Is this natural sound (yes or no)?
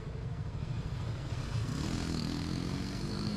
no